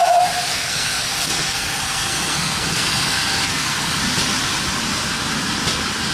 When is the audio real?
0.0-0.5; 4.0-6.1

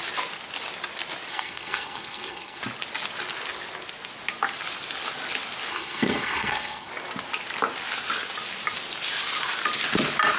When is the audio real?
0.0-1.3; 2.6-5.7; 6.9-10.4